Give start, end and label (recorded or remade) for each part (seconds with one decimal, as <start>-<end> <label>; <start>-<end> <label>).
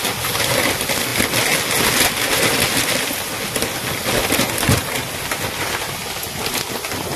0.0-7.2 recorded